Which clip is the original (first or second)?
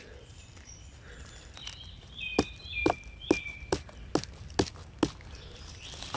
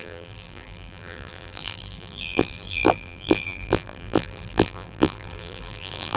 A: first